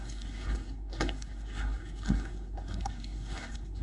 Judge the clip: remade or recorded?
remade